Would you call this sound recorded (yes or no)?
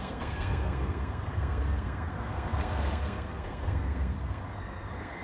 no